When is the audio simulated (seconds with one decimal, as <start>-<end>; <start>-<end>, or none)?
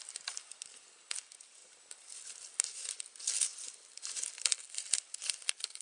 none